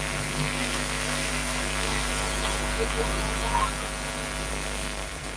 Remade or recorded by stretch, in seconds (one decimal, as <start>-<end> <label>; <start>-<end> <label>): 0.0-2.1 remade; 2.1-4.5 recorded; 4.5-5.4 remade

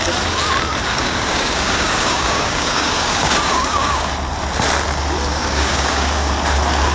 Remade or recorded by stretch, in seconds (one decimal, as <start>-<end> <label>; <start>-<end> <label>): 0.0-0.9 recorded; 0.9-4.1 remade; 4.1-5.3 recorded; 5.3-6.3 remade; 6.3-6.9 recorded